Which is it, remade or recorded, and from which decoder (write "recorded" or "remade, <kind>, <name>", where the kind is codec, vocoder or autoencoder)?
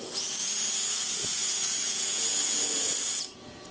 remade, vocoder, Vocos